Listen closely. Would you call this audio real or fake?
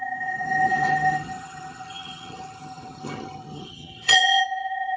fake